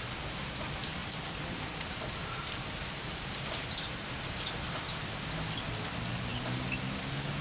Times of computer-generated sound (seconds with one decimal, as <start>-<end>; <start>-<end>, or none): 1.0-4.8